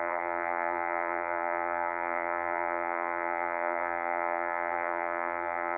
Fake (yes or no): yes